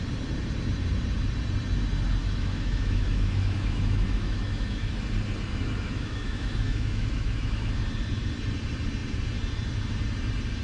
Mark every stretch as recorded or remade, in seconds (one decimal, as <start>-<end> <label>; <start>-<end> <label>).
0.0-2.2 recorded; 2.2-4.9 remade; 4.9-5.5 recorded; 5.5-7.7 remade; 7.7-10.6 recorded